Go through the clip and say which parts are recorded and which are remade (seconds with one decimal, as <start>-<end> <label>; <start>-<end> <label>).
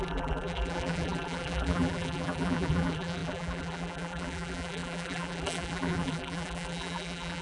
0.0-7.4 remade